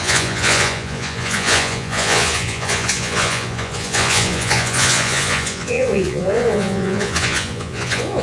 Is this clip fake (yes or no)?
yes